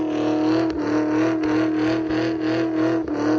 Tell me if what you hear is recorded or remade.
recorded